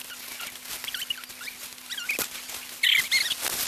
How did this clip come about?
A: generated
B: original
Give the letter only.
B